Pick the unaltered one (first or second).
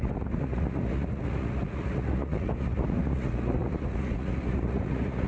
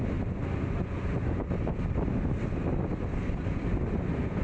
second